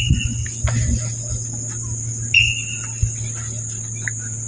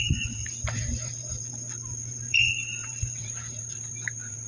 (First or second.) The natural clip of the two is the first